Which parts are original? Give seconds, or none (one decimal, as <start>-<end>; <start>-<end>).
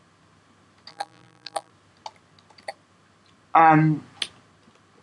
0.0-0.9; 1.7-5.0